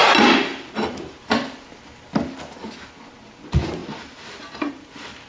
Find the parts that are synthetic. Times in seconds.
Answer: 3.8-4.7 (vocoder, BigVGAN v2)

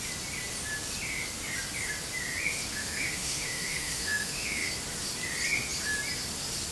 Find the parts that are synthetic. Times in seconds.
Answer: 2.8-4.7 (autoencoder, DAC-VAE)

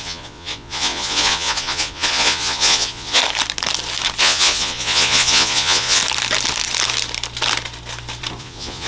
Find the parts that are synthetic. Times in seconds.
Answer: 0.0-3.2 (vocoder, Vocos); 4.2-6.0; 8.4-8.9

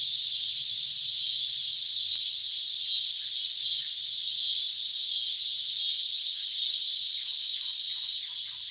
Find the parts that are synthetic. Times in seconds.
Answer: 0.0-2.9 (vocoder, BigVGAN v2); 3.7-4.2; 7.6-8.7

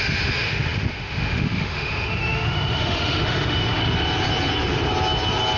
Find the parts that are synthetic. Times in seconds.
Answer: 0.0-3.8 (autoencoder, DAC-VAE)

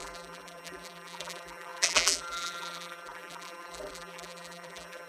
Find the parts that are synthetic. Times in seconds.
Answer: 0.0-5.1 (vocoder, BigVGAN v2)

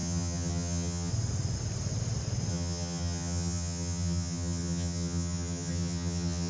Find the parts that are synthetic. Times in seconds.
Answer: 0.0-1.1 (vocoder, HiFi-GAN); 2.5-6.5